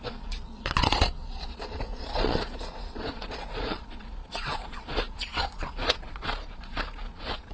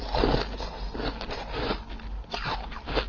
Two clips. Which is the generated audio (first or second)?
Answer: first